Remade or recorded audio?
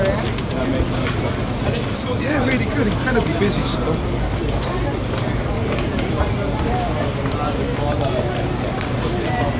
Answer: recorded